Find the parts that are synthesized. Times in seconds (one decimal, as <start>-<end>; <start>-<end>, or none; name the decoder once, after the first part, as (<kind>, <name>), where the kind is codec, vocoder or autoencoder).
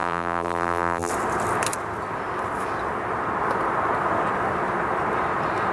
0.0-1.1 (vocoder, BigVGAN v2)